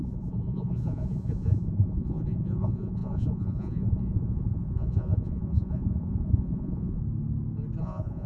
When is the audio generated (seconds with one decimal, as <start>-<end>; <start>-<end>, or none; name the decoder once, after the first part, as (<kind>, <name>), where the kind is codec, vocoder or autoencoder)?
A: 0.0-7.0 (vocoder, Vocos); 7.8-8.3